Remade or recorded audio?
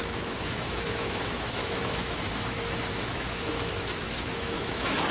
remade